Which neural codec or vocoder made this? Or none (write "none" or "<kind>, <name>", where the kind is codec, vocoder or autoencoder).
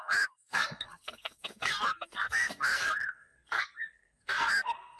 codec, SNAC